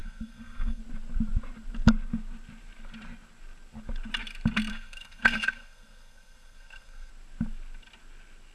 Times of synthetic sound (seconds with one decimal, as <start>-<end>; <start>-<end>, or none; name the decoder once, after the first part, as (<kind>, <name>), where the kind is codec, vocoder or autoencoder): 0.0-0.8 (codec, SNAC); 4.7-7.1